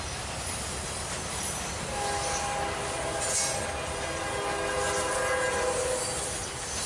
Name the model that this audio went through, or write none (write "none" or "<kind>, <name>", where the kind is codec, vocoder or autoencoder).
none